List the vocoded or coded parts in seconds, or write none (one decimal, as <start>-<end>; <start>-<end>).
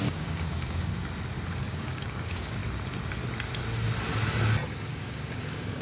0.0-0.9; 1.6-2.6; 5.0-5.8